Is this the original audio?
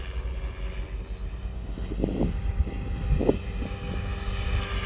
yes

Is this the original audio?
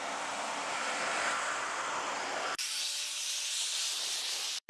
no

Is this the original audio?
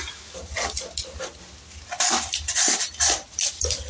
yes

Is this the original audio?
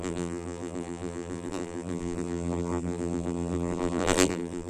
no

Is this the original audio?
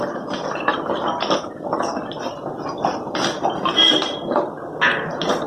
yes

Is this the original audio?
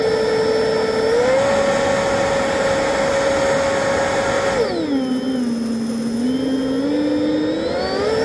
yes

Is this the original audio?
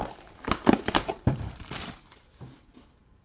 no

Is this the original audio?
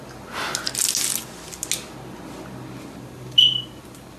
yes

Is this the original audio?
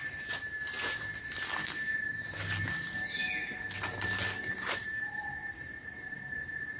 yes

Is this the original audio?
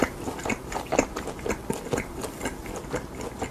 yes